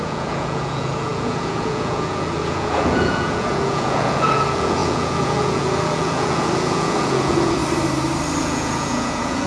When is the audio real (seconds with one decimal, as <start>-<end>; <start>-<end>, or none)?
7.6-8.4